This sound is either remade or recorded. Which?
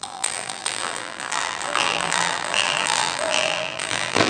remade